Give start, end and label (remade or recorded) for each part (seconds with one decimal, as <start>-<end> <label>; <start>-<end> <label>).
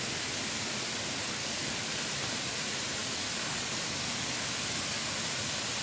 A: 0.0-1.4 recorded; 1.4-2.0 remade; 2.0-3.0 recorded; 3.0-4.6 remade; 4.6-5.8 recorded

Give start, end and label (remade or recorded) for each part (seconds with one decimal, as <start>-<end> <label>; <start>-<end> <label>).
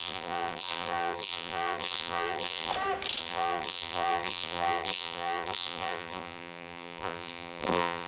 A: 0.0-2.7 remade; 2.7-3.2 recorded; 3.2-8.1 remade